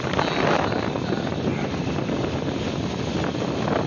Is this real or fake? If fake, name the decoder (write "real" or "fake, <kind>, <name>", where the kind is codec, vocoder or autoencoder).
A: real